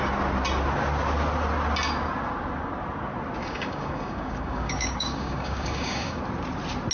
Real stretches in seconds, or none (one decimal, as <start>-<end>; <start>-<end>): 0.0-3.4; 6.2-6.9